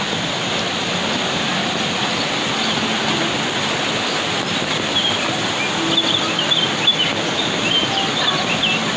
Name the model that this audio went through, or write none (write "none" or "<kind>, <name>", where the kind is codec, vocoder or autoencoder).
none